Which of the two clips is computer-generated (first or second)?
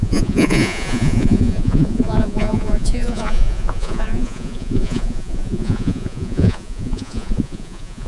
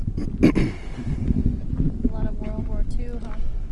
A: first